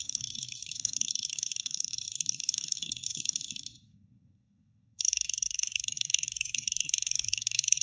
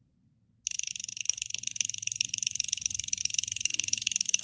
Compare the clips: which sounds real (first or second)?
second